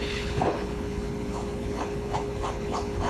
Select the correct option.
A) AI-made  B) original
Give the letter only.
A